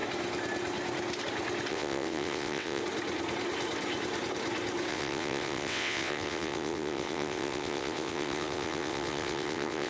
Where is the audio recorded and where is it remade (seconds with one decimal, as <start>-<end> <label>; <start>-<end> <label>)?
0.0-1.7 recorded; 1.7-2.8 remade; 2.8-4.9 recorded; 4.9-9.9 remade